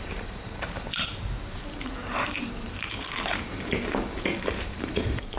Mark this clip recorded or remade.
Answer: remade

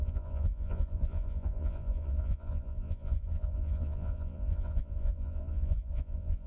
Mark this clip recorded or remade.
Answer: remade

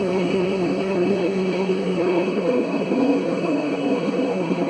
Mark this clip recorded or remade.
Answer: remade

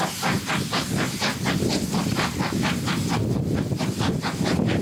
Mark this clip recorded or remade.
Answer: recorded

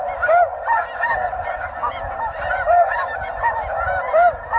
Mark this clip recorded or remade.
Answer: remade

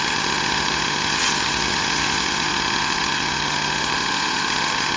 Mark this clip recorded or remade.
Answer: remade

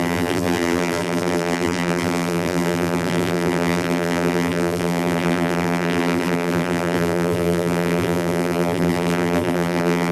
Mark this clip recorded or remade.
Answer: remade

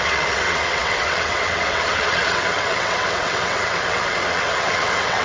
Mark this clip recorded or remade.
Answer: remade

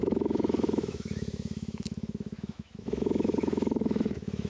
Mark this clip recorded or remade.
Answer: remade